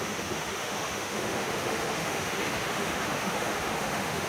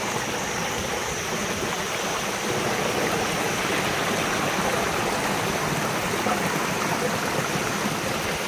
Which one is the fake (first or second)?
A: first